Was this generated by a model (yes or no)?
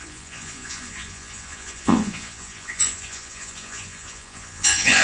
yes